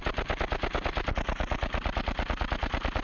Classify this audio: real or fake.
real